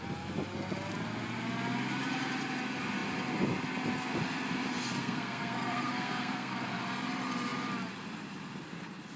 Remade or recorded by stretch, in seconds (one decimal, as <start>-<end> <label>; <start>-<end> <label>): 0.0-5.0 recorded; 5.0-6.8 remade; 6.8-9.2 recorded